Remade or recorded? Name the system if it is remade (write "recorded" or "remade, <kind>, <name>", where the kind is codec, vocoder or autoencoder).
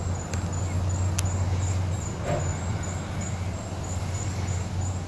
recorded